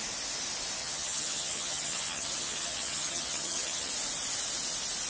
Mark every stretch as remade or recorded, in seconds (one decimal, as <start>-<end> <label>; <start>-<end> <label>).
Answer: 0.0-0.8 recorded; 0.8-3.9 remade; 3.9-5.1 recorded